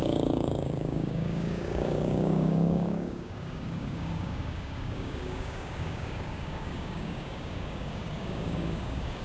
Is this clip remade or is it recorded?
remade